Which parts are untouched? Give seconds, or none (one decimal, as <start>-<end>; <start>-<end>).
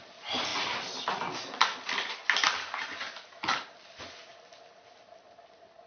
0.0-5.9